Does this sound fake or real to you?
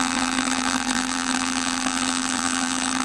fake